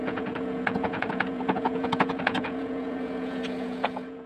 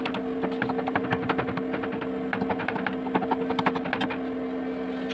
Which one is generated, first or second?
first